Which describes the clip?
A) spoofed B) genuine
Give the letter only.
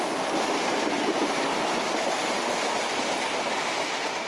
B